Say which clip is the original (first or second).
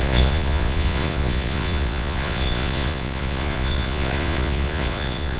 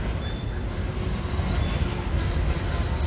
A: second